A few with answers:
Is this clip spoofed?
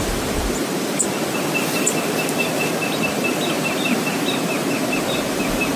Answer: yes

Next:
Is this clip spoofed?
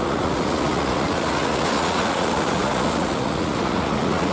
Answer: yes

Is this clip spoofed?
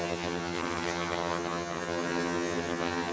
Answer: yes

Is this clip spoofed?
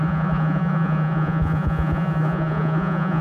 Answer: yes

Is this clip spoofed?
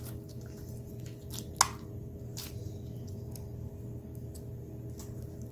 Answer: no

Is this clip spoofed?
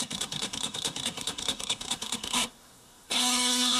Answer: yes